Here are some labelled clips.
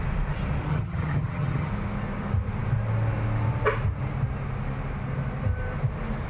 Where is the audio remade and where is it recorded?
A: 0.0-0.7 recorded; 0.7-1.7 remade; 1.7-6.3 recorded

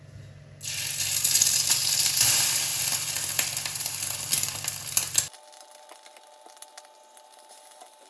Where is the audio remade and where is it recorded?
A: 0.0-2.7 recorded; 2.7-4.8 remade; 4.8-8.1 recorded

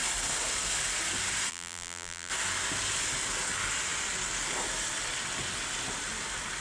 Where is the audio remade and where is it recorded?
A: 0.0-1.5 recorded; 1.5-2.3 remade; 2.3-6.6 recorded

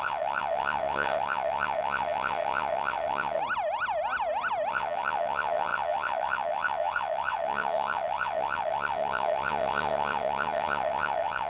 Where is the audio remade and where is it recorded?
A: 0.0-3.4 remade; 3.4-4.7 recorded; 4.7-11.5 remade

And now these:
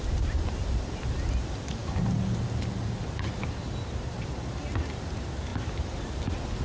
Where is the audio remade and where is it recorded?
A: 0.0-6.6 recorded

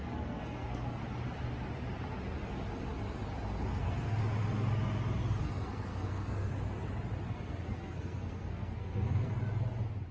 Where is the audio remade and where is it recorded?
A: 0.0-1.0 remade; 1.0-3.8 recorded; 3.8-4.2 remade; 4.2-5.4 recorded; 5.4-6.5 remade; 6.5-7.3 recorded; 7.3-9.4 remade; 9.4-10.1 recorded

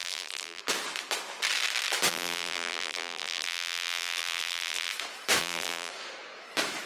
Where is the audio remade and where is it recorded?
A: 0.0-0.6 remade; 0.6-2.1 recorded; 2.1-4.9 remade; 4.9-5.4 recorded; 5.4-5.9 remade; 5.9-6.9 recorded

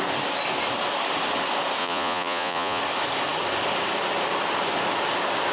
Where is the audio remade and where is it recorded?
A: 0.0-1.8 recorded; 1.8-2.8 remade; 2.8-5.5 recorded